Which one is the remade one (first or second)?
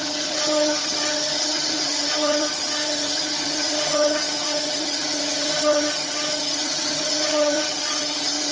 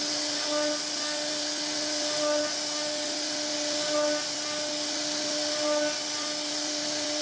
first